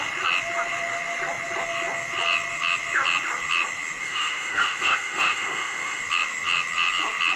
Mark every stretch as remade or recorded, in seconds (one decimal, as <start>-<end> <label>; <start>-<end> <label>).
0.0-4.0 recorded; 4.0-6.0 remade; 6.0-7.4 recorded